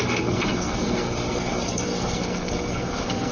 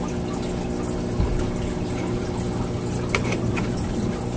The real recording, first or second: second